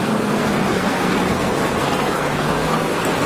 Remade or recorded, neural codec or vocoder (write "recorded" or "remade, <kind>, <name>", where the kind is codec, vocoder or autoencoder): remade, codec, SNAC